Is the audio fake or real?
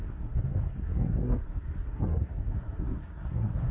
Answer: fake